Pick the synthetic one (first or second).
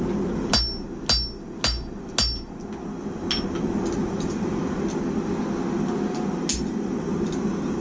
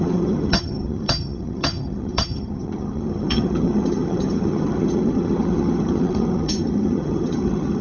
second